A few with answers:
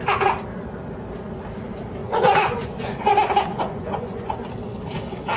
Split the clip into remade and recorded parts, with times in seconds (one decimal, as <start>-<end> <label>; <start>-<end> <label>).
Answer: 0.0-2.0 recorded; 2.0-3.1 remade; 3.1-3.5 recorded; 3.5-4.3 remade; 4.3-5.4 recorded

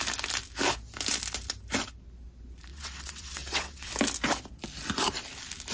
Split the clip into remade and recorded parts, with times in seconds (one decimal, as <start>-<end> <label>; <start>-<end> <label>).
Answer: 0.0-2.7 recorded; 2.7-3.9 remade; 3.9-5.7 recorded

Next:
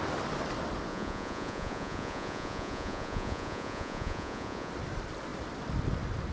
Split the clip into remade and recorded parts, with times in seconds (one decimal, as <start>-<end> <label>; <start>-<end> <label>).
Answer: 0.0-0.9 recorded; 0.9-4.7 remade; 4.7-6.3 recorded

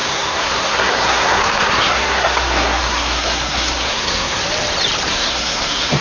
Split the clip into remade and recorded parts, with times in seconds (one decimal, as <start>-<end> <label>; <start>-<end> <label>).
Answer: 0.0-4.4 remade; 4.4-5.1 recorded; 5.1-6.0 remade

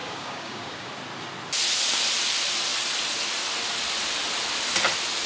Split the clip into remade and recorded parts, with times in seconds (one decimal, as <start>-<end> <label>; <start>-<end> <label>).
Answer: 0.0-0.9 remade; 0.9-5.3 recorded

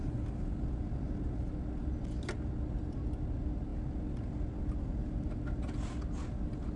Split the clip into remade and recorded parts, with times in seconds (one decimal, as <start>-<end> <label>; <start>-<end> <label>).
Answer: 0.0-6.8 recorded